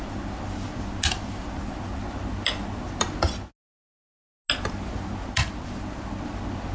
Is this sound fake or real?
real